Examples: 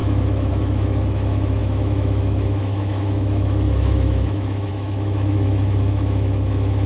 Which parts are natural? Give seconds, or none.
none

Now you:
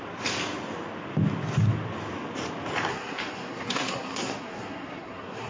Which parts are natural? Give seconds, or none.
0.0-2.9

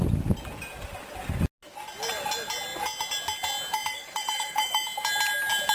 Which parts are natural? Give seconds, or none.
0.0-3.9; 4.8-5.7

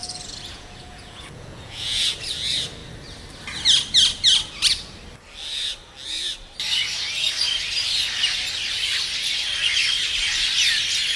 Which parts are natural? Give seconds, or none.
2.1-11.2

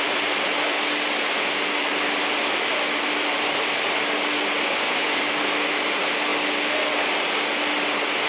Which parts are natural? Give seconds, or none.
0.0-4.7; 5.2-8.3

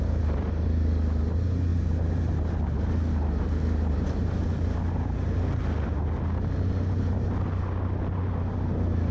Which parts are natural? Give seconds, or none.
0.0-9.1

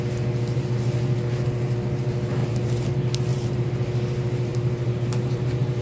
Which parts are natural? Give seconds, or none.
0.0-2.4; 2.9-3.3; 3.8-4.5